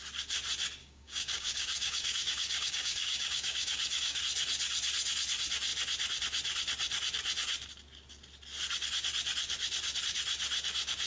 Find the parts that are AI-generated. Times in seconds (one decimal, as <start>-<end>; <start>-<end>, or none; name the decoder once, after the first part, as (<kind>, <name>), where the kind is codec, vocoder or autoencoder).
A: 0.8-4.2 (codec, DAC)